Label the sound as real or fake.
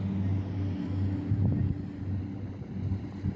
real